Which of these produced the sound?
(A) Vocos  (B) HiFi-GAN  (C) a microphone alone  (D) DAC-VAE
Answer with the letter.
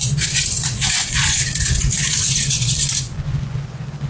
A